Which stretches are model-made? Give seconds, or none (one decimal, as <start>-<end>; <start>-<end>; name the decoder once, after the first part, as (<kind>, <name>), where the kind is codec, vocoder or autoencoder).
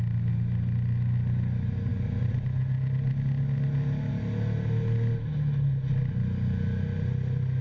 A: none